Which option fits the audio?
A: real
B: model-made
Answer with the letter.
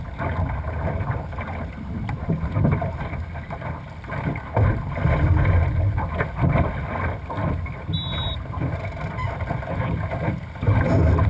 A